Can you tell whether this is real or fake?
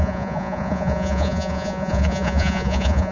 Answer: fake